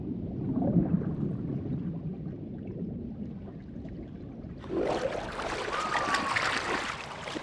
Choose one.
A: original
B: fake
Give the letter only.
A